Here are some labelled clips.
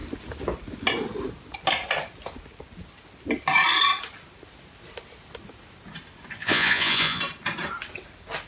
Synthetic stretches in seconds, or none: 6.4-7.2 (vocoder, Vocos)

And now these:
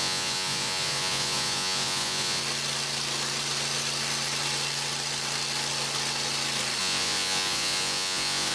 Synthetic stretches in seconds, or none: 0.0-2.4 (vocoder, Vocos); 6.8-8.5

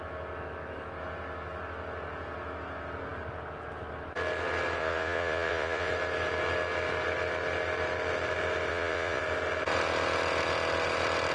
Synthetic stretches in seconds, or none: 4.8-5.9 (vocoder, Vocos); 8.7-9.2